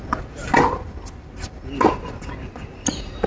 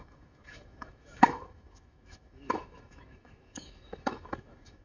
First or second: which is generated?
second